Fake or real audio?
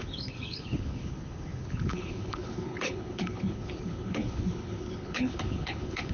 fake